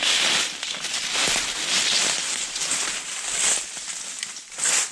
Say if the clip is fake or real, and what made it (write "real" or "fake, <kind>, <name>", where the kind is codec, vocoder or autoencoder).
real